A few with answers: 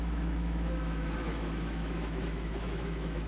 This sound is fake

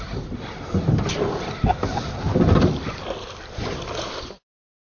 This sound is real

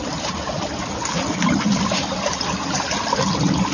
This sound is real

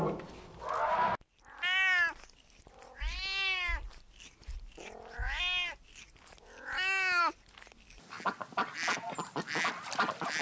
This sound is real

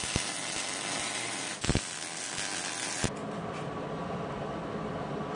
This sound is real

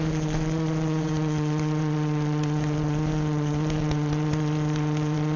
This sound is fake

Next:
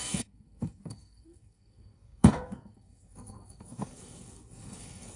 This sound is fake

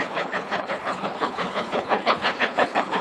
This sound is fake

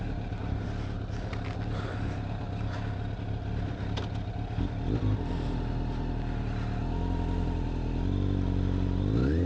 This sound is real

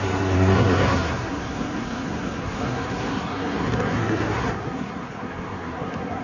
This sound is fake